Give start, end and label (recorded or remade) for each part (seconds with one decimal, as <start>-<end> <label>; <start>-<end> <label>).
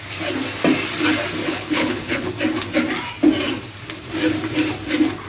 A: 0.0-1.4 recorded; 1.4-2.3 remade; 2.3-5.3 recorded